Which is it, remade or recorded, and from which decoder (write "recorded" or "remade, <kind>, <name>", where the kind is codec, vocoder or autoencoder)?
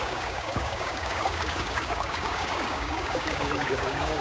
remade, codec, DAC